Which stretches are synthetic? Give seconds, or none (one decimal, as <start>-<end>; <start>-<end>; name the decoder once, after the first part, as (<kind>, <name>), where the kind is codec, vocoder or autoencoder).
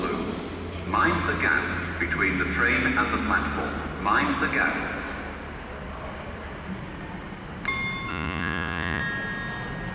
8.1-9.0 (vocoder, Vocos)